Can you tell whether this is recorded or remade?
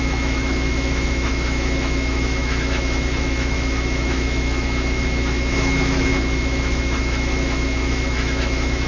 remade